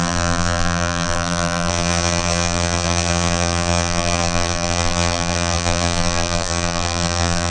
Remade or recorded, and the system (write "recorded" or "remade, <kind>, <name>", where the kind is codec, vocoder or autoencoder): remade, vocoder, BigVGAN v2